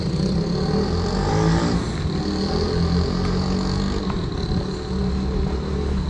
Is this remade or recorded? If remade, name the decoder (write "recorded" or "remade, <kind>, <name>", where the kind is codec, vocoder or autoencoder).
recorded